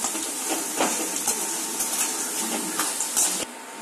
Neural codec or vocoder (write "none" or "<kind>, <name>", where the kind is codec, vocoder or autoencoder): none